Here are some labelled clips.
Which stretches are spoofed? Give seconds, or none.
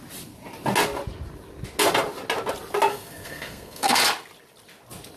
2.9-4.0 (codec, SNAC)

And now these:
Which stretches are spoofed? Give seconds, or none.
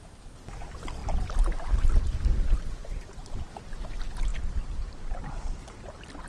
2.8-3.5 (vocoder, BigVGAN v2); 4.3-5.3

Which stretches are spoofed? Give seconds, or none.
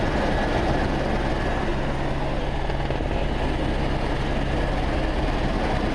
0.0-1.7 (vocoder, BigVGAN v2); 5.2-5.9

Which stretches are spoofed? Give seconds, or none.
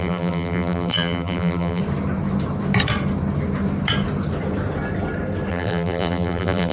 0.0-1.8 (vocoder, BigVGAN v2); 5.5-6.7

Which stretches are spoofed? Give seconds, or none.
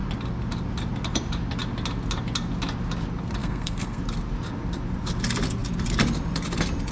3.4-4.0 (codec, SNAC)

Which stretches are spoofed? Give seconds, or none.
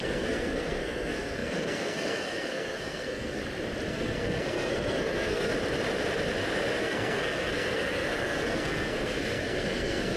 0.0-3.4 (codec, SNAC); 3.9-5.5; 6.8-10.2